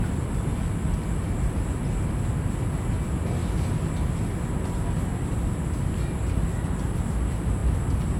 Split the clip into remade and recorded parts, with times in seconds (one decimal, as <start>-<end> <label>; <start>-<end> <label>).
0.0-8.2 recorded